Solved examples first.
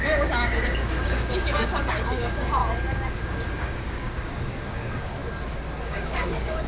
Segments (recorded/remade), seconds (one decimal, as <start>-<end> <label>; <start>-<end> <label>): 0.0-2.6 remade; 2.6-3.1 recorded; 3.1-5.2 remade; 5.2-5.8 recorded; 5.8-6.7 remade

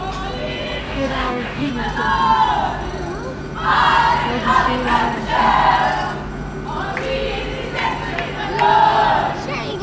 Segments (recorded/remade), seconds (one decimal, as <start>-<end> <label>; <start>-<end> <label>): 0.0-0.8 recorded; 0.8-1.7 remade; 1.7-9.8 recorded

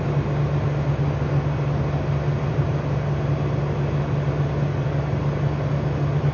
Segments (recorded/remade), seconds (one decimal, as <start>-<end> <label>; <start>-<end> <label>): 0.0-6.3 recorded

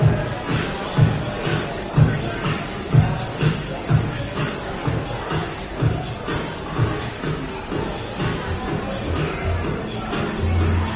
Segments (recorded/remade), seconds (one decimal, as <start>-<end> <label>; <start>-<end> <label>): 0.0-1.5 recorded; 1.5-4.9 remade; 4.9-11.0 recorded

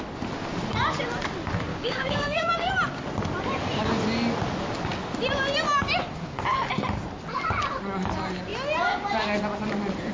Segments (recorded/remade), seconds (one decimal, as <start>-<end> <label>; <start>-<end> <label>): 0.0-1.7 recorded; 1.7-2.7 remade; 2.7-10.1 recorded

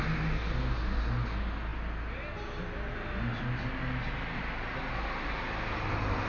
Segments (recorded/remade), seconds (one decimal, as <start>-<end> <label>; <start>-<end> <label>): 0.0-6.3 recorded

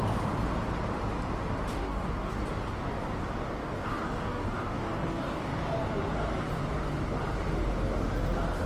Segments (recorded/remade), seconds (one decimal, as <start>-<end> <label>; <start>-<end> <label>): 0.0-1.7 recorded; 1.7-2.4 remade; 2.4-3.6 recorded; 3.6-5.8 remade; 5.8-8.7 recorded